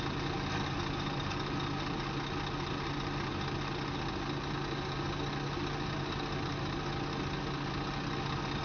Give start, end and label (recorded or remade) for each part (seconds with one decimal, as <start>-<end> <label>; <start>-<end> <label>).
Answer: 0.0-8.6 recorded